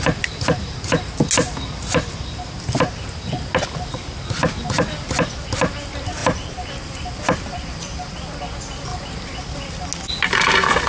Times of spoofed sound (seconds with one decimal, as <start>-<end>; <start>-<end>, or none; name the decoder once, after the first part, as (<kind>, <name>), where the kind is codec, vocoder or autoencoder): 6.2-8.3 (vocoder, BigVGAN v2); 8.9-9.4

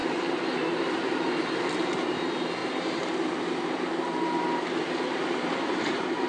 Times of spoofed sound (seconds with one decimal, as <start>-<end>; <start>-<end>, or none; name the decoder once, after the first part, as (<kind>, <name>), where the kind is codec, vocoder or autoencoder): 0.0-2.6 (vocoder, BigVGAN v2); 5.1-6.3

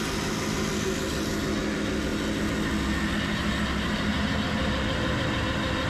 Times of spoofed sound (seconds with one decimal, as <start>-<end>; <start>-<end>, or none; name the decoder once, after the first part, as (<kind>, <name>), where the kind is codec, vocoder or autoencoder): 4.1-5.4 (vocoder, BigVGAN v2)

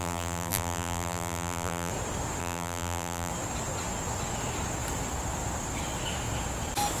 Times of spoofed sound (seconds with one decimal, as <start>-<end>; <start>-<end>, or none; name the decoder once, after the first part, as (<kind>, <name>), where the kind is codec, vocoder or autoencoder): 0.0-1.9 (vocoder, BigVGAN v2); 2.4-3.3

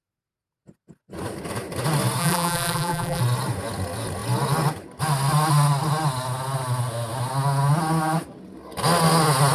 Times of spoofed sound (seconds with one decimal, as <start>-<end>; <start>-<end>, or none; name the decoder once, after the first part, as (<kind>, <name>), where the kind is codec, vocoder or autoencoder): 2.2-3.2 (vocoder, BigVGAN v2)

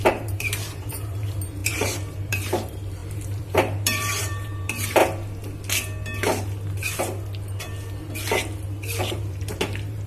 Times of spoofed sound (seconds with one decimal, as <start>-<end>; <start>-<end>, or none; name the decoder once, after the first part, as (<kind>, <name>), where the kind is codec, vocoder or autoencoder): 0.0-5.0 (vocoder, BigVGAN v2); 9.0-10.1